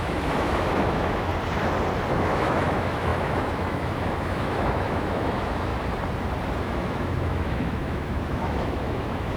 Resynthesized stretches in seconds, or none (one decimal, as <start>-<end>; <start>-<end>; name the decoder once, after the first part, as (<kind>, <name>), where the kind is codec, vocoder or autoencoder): 0.0-1.3 (autoencoder, DAC-VAE); 2.1-5.7; 6.6-9.4